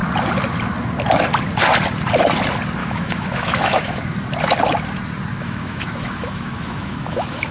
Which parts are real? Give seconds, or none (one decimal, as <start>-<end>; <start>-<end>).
0.0-2.8; 4.0-5.4